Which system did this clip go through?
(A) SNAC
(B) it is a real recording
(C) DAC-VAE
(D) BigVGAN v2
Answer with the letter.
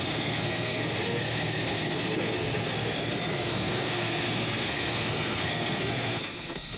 A